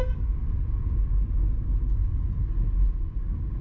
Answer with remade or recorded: recorded